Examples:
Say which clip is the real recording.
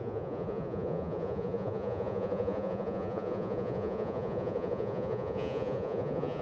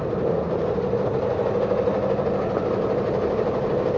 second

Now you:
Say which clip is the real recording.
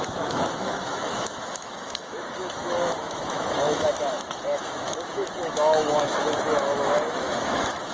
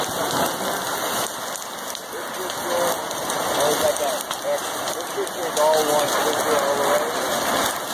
second